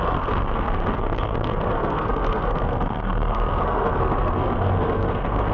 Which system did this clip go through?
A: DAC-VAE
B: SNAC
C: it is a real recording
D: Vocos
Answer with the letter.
B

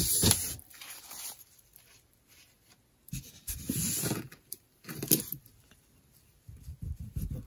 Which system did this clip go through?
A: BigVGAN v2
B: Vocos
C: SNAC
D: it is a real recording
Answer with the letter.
A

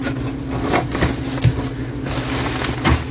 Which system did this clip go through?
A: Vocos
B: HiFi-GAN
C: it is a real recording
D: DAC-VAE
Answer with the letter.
C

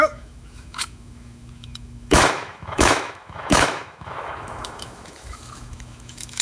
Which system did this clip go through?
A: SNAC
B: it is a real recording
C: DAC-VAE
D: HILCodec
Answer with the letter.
C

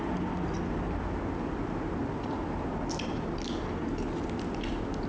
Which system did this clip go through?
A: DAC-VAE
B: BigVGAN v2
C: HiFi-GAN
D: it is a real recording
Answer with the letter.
D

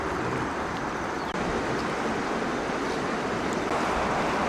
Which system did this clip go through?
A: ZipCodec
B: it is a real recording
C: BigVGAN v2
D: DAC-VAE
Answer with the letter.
B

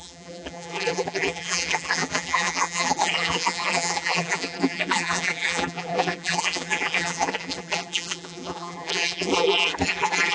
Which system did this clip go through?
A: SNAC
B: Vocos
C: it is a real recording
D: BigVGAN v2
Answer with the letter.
D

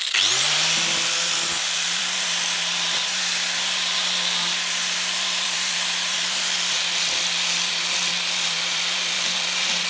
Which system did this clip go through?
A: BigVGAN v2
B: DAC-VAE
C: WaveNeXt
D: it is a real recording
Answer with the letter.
A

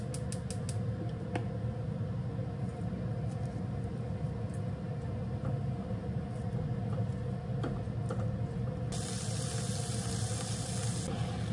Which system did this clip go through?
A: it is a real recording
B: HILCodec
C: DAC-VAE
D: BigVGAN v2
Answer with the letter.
A